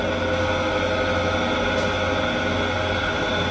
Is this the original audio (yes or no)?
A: yes